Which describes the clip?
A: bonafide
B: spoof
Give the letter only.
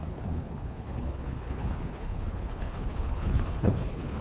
B